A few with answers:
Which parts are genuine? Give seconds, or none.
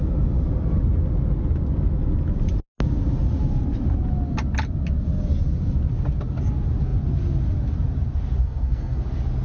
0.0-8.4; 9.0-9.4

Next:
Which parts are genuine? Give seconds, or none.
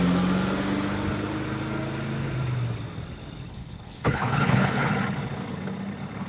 0.0-3.5; 4.9-6.3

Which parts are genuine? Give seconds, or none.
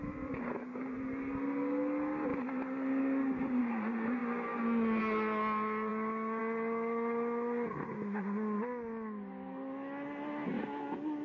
0.0-11.2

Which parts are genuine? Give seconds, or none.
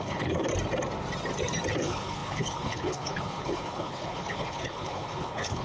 0.5-1.8